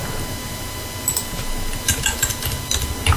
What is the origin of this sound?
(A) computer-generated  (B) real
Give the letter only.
B